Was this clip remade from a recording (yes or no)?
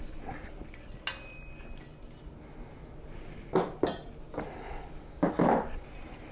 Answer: no